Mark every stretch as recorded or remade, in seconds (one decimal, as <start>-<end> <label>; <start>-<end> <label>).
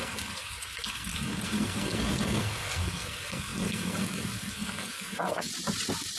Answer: 0.0-5.5 remade; 5.5-6.2 recorded